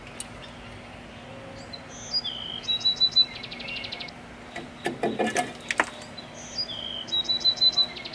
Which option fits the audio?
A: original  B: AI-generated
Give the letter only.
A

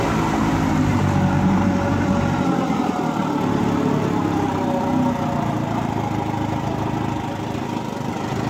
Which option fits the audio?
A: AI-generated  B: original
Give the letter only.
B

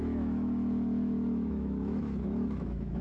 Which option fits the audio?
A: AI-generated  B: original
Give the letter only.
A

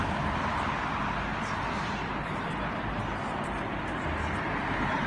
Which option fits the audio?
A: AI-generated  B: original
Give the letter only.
B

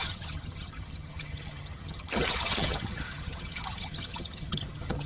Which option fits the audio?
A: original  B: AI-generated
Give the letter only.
B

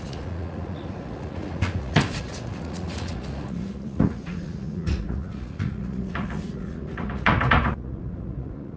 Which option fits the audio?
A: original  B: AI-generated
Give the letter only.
B